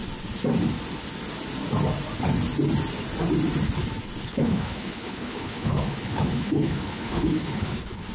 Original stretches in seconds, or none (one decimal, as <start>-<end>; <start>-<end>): 0.0-4.2